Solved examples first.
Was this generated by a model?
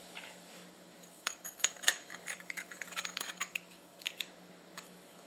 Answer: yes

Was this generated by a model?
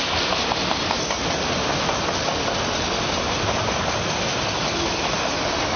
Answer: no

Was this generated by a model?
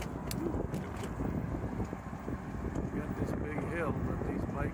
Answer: no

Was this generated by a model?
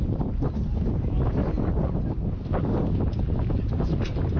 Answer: no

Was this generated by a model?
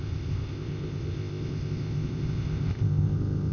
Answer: yes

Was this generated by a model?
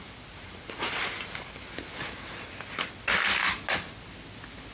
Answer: no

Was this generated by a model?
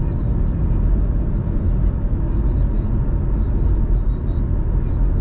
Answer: no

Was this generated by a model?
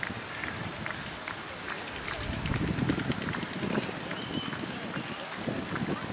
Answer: no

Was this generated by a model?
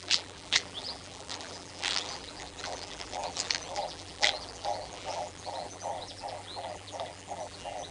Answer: yes